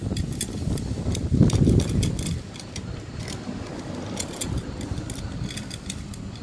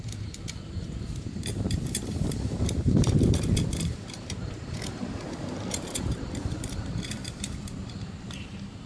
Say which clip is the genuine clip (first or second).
first